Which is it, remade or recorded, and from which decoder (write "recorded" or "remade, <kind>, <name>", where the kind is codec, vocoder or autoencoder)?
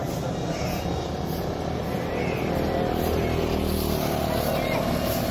recorded